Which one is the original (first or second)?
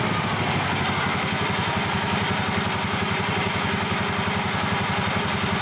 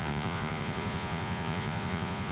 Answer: first